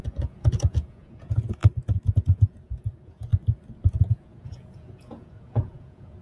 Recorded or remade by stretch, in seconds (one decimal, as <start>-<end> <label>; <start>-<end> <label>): 0.0-1.6 remade; 1.6-2.1 recorded; 2.1-3.3 remade; 3.3-4.1 recorded; 4.1-6.2 remade